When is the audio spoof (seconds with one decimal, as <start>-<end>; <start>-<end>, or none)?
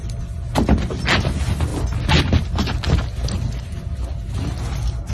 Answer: none